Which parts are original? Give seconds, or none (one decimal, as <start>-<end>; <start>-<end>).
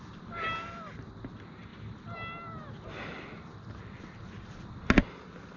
0.0-5.6